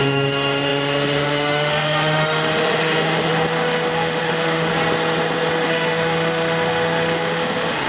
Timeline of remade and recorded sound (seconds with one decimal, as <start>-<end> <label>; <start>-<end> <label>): 0.0-4.7 remade; 4.7-5.5 recorded; 5.5-7.9 remade